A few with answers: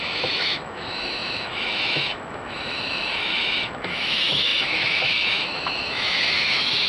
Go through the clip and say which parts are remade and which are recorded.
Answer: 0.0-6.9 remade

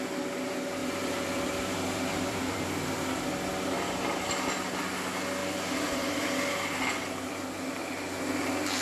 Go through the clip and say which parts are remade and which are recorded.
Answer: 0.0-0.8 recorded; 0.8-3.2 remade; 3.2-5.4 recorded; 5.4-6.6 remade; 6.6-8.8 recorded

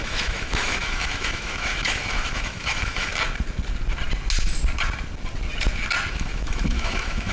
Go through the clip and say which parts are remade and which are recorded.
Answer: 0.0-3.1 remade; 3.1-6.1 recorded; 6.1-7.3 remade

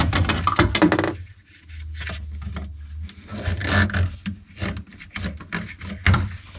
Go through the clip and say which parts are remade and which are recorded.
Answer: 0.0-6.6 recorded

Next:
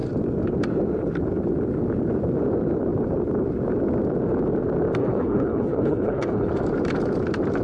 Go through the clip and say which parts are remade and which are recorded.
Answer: 0.0-5.0 recorded; 5.0-6.5 remade; 6.5-7.6 recorded

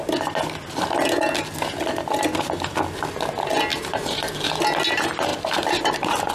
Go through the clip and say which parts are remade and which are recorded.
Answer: 0.0-3.7 recorded; 3.7-4.6 remade; 4.6-5.3 recorded; 5.3-6.3 remade